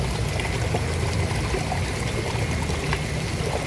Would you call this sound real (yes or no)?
yes